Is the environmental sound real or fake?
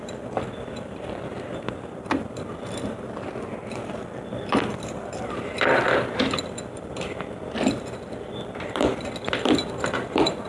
fake